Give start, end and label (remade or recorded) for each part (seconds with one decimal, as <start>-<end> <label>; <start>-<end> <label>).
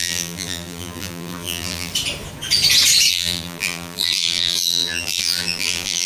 0.0-1.9 remade; 1.9-3.1 recorded; 3.1-6.1 remade